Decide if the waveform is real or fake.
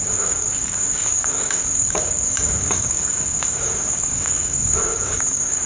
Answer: fake